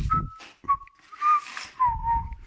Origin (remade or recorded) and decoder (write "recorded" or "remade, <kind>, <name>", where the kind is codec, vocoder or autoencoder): recorded